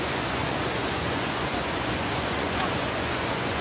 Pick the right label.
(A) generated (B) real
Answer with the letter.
A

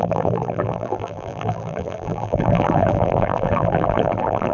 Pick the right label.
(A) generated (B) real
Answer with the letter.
A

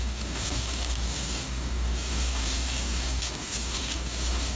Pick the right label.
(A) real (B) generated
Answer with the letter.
B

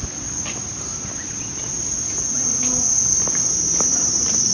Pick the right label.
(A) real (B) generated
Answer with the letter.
A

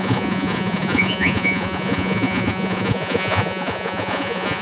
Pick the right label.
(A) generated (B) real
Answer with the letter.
A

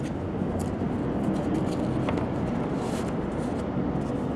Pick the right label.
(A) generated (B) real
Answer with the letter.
B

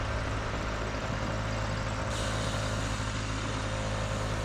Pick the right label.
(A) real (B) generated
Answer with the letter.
A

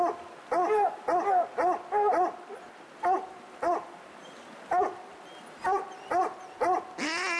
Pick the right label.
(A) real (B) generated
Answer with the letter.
A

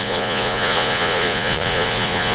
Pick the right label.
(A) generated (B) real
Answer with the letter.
A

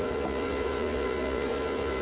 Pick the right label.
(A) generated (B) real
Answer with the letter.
A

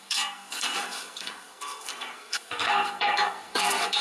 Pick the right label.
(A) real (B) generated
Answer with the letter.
B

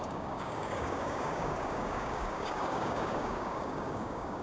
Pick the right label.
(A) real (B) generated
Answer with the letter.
B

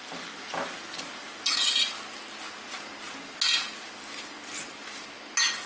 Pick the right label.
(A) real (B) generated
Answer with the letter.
A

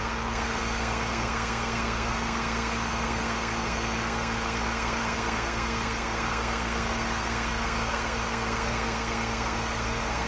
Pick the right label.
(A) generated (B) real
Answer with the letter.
A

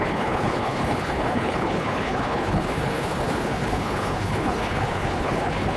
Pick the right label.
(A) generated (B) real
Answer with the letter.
A